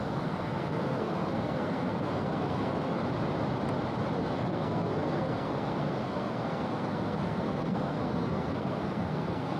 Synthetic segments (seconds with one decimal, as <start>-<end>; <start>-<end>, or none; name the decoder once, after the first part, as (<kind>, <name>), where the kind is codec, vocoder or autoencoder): 0.0-3.0 (codec, SNAC); 4.2-9.6